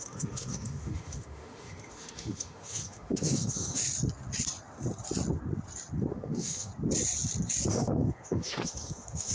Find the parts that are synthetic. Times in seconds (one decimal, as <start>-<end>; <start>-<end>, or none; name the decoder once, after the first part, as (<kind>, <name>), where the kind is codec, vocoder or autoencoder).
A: 0.0-3.8 (autoencoder, DAC-VAE); 6.1-6.7; 7.7-9.3